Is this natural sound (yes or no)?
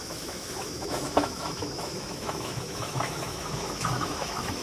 no